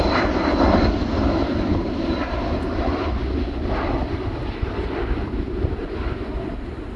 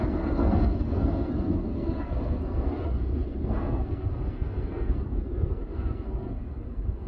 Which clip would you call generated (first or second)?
second